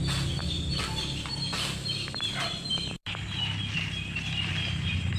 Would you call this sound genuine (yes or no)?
yes